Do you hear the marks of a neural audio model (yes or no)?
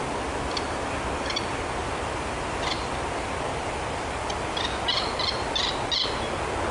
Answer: no